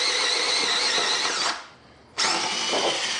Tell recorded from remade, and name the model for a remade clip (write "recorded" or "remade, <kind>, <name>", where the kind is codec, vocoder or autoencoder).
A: recorded